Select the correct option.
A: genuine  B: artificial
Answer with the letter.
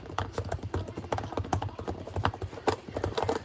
A